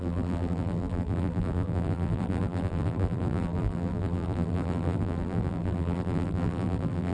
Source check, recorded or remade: remade